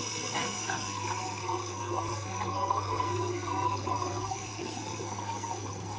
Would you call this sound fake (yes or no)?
yes